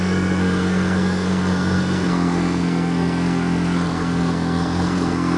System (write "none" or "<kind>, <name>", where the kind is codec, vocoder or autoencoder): codec, SNAC